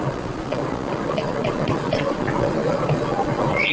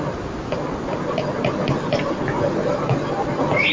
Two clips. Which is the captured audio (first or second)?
second